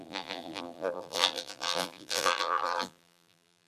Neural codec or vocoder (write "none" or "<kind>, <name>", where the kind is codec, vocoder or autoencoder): vocoder, BigVGAN v2